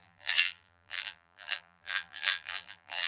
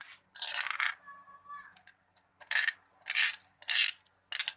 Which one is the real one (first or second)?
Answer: second